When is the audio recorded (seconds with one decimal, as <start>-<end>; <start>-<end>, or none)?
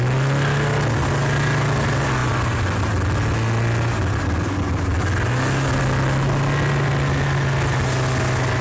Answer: 0.0-8.6